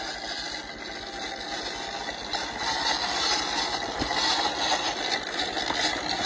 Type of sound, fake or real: real